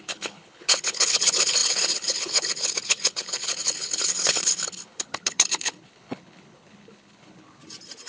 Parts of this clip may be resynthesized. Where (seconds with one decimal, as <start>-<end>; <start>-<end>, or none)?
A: 0.0-7.6